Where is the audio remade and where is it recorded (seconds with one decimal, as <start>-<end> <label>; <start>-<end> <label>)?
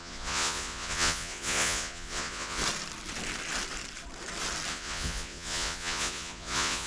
0.0-2.6 remade; 2.6-4.7 recorded; 4.7-6.9 remade